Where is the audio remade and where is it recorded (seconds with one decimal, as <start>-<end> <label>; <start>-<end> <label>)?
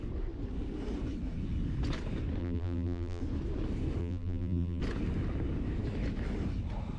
0.0-2.4 recorded; 2.4-3.2 remade; 3.2-4.0 recorded; 4.0-4.8 remade; 4.8-7.0 recorded